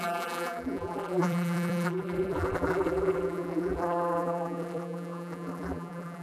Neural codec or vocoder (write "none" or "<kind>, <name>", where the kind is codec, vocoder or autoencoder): vocoder, BigVGAN v2